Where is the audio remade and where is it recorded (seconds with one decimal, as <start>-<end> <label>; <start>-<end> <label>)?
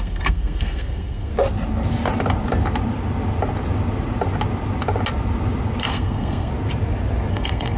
0.0-1.3 remade; 1.3-5.8 recorded; 5.8-6.5 remade; 6.5-7.3 recorded; 7.3-7.8 remade